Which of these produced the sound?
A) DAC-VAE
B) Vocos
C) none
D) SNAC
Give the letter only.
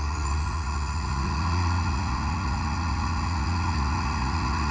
B